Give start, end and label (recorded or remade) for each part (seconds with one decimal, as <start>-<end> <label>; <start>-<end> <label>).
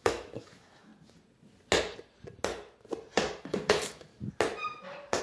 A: 0.0-0.9 remade; 0.9-3.4 recorded; 3.4-4.1 remade; 4.1-5.2 recorded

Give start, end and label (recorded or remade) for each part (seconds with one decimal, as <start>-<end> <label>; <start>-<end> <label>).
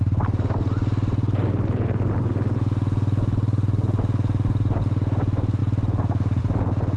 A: 0.0-7.0 recorded